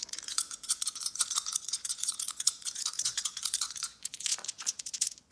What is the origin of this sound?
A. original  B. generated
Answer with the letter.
B